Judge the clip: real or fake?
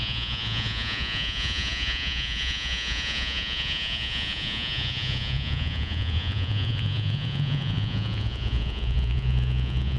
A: fake